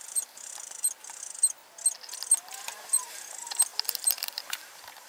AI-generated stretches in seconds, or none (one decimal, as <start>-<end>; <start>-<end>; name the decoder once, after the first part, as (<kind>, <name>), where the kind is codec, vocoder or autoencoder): 0.0-1.6 (vocoder, BigVGAN v2); 3.1-5.1